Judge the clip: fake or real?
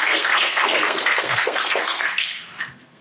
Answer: fake